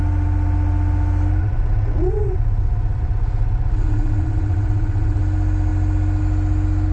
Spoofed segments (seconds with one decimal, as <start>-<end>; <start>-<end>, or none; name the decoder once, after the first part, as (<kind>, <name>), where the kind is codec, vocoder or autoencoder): 1.4-5.2 (vocoder, WaveNeXt)